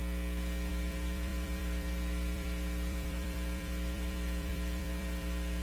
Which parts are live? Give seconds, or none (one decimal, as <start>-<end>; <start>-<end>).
0.0-0.7